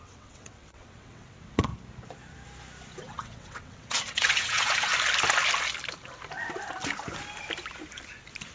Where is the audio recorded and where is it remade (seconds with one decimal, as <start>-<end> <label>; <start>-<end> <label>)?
0.0-1.7 remade; 1.7-3.0 recorded; 3.0-4.9 remade; 4.9-8.5 recorded